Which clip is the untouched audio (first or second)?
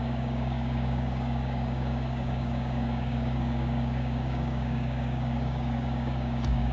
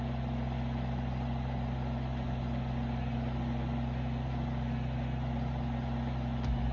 second